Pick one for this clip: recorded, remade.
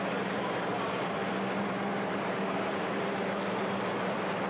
remade